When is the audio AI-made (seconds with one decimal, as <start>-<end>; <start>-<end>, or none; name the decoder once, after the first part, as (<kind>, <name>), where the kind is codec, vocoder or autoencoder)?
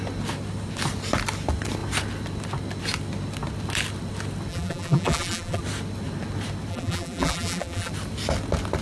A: 4.5-5.6 (vocoder, BigVGAN v2); 6.7-7.9